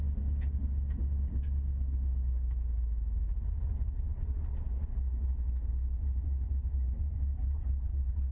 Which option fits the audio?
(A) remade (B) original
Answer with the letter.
B